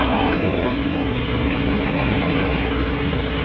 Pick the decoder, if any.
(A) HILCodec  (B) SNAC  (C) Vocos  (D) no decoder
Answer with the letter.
B